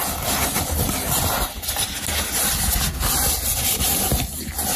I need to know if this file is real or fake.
real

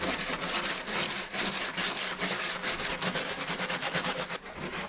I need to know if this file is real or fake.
real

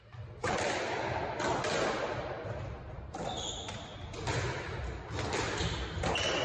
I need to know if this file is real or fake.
real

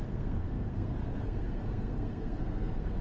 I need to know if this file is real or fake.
fake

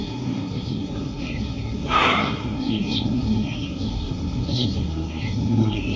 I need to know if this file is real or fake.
fake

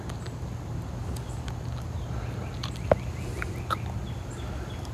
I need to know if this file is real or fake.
real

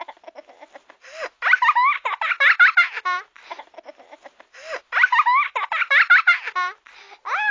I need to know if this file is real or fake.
real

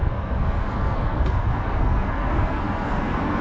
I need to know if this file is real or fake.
fake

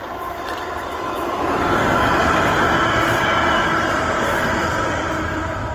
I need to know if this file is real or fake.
real